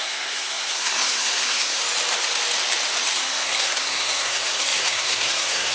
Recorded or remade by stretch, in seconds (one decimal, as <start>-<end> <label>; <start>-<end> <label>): 0.0-1.8 remade; 1.8-3.1 recorded; 3.1-5.7 remade